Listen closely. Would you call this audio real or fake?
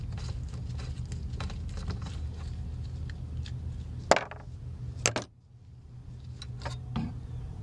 real